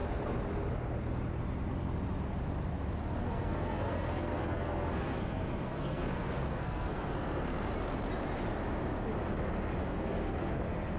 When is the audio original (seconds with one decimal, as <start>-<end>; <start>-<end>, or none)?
0.0-3.2; 7.7-9.8; 10.6-11.0